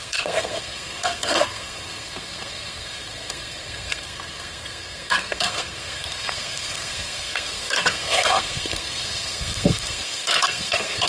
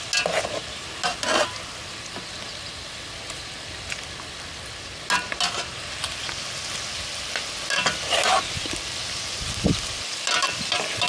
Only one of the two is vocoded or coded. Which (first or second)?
first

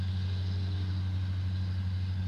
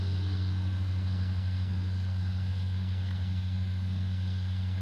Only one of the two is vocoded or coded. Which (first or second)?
second